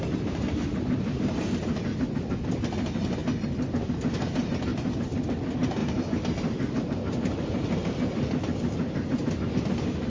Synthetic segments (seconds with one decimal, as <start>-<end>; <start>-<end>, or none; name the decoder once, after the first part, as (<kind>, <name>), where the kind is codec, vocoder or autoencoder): 4.7-5.2 (vocoder, BigVGAN v2)